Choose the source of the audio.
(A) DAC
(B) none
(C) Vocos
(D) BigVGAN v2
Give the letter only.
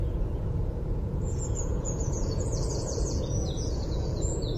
C